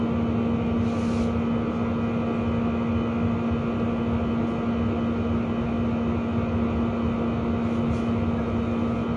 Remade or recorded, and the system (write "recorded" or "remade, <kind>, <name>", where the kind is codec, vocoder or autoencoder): recorded